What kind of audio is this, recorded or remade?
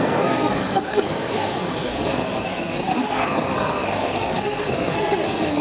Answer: remade